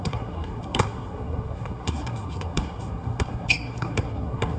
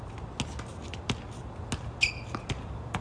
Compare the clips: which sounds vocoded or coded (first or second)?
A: first